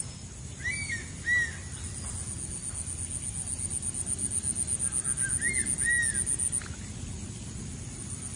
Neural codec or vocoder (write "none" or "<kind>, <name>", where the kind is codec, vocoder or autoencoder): none